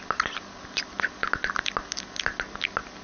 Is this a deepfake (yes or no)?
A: no